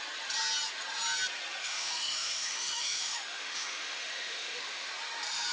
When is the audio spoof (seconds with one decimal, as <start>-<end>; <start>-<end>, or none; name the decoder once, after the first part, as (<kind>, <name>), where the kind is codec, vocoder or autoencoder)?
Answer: 1.6-4.9 (autoencoder, DAC-VAE)